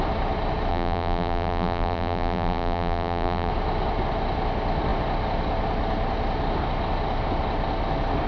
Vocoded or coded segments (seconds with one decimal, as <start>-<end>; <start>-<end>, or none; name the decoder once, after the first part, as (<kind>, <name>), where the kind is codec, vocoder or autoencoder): 0.7-3.5 (vocoder, BigVGAN v2)